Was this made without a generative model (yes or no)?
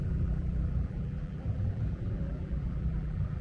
no